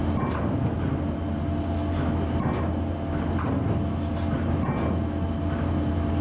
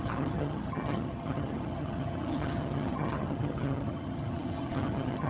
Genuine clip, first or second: first